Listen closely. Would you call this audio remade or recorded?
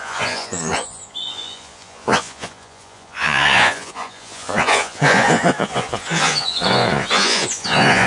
remade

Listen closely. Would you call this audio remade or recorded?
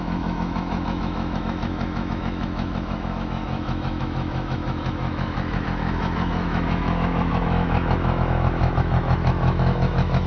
remade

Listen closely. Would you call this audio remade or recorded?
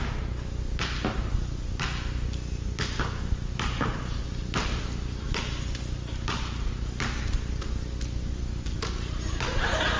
recorded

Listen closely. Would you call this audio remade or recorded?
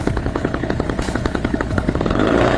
remade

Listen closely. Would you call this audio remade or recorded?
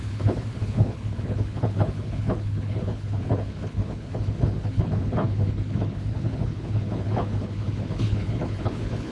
remade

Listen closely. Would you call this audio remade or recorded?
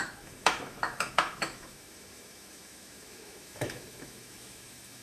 remade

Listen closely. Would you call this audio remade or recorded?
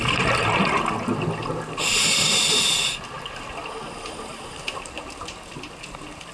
recorded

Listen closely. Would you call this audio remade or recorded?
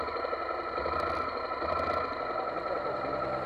recorded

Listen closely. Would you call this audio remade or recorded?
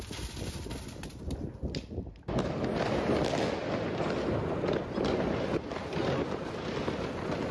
recorded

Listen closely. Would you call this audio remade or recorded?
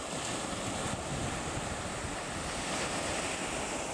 recorded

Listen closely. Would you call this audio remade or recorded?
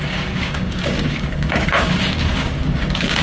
remade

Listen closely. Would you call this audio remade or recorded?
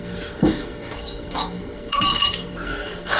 remade